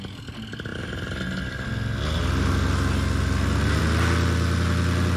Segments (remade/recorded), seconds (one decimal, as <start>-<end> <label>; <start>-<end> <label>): 0.0-5.2 recorded

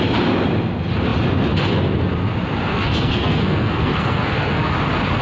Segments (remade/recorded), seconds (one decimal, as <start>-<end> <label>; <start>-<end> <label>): 0.0-2.7 recorded; 2.7-4.7 remade; 4.7-5.2 recorded

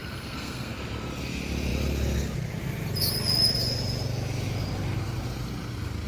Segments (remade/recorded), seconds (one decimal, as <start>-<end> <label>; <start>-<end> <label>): 0.0-0.7 remade; 0.7-6.1 recorded

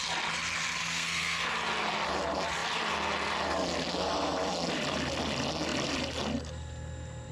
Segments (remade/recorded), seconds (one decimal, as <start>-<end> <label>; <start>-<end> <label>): 0.0-0.8 recorded; 0.8-1.5 remade; 1.5-7.3 recorded

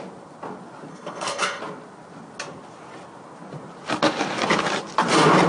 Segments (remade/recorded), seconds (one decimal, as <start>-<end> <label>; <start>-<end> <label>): 0.0-0.9 recorded; 0.9-1.6 remade; 1.6-5.5 recorded

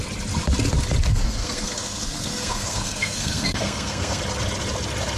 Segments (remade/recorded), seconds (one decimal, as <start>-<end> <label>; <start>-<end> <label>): 0.0-1.1 recorded; 1.1-4.2 remade; 4.2-5.2 recorded

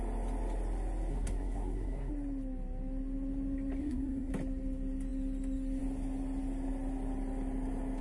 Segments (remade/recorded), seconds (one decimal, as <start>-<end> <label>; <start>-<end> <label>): 0.0-1.1 recorded; 1.1-2.1 remade; 2.1-3.8 recorded; 3.8-4.3 remade; 4.3-8.0 recorded

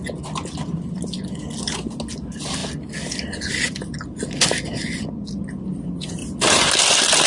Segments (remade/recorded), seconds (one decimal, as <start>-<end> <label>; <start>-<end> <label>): 0.0-7.3 recorded